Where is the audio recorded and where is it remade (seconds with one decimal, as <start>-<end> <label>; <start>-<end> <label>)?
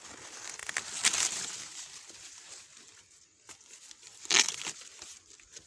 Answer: 0.0-5.7 recorded